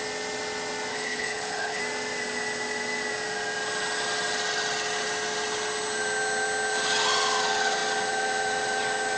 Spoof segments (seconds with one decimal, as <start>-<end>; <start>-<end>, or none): 0.9-1.8